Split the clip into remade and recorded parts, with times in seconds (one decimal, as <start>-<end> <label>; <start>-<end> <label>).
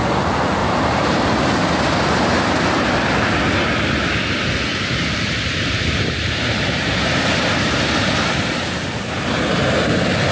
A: 0.0-0.6 recorded; 0.6-1.7 remade; 1.7-4.7 recorded; 4.7-9.4 remade; 9.4-10.3 recorded